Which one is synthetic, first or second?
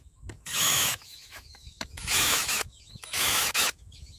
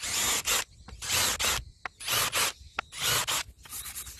first